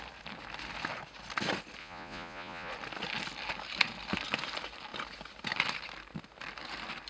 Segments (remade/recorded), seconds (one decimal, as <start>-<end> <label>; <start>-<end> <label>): 0.0-1.8 recorded; 1.8-2.7 remade; 2.7-7.1 recorded